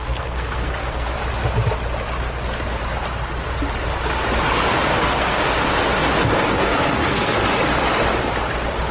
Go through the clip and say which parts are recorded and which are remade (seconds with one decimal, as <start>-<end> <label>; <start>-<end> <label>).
0.0-1.2 remade; 1.2-5.0 recorded; 5.0-5.4 remade; 5.4-6.5 recorded; 6.5-7.4 remade; 7.4-8.9 recorded